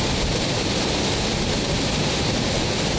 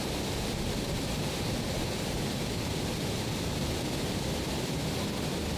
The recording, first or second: first